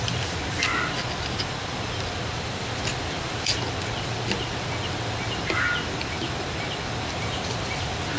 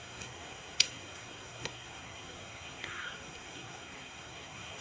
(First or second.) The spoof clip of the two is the second